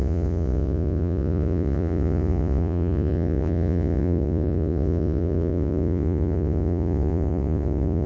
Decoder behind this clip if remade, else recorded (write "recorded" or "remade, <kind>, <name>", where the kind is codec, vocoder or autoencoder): remade, vocoder, Vocos